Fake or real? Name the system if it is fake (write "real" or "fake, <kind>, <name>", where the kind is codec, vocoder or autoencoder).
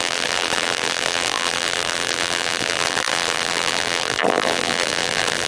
fake, vocoder, BigVGAN v2